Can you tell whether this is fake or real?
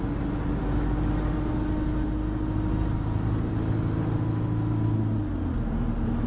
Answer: real